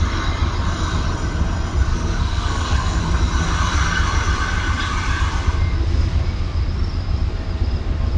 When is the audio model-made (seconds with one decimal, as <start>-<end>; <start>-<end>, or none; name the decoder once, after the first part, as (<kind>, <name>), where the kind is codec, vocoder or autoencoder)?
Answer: 1.9-3.0 (codec, SNAC)